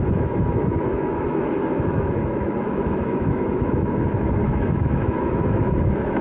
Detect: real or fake fake